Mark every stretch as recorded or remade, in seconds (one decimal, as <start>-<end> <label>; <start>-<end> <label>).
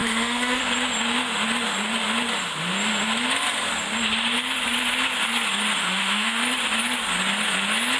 0.0-0.6 remade; 0.6-5.8 recorded; 5.8-6.4 remade; 6.4-8.0 recorded